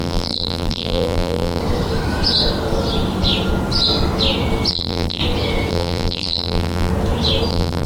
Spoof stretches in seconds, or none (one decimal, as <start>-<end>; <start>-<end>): 0.0-1.6; 4.7-5.2; 5.7-6.9; 7.5-7.9